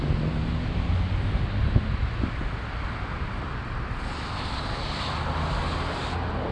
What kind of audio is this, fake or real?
real